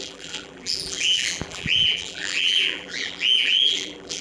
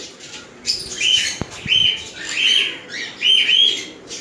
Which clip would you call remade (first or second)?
first